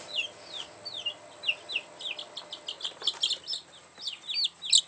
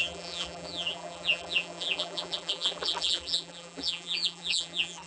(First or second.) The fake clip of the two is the second